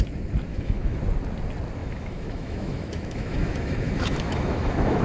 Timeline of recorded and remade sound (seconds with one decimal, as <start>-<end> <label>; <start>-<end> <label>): 0.0-0.5 recorded; 0.5-1.0 remade; 1.0-1.8 recorded; 1.8-5.0 remade